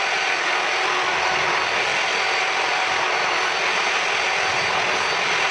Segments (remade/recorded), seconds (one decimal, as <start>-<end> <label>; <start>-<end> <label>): 0.0-1.9 remade; 1.9-5.5 recorded